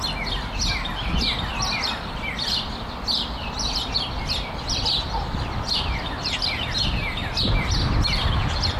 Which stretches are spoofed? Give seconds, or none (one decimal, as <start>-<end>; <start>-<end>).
1.5-6.5; 7.2-8.8